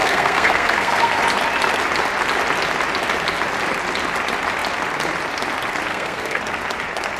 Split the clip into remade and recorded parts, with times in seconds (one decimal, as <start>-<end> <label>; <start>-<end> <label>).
0.0-1.2 remade; 1.2-5.9 recorded; 5.9-6.4 remade; 6.4-7.2 recorded